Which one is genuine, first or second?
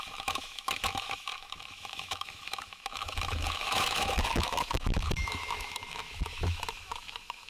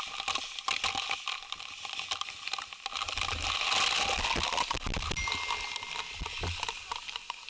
second